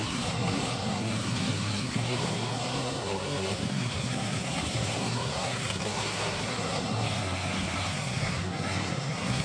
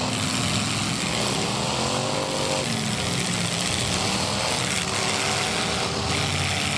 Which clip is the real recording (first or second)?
second